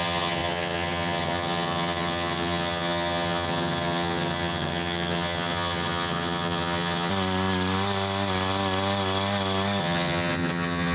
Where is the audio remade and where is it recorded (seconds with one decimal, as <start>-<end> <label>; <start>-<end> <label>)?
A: 0.0-7.1 remade; 7.1-9.8 recorded; 9.8-10.9 remade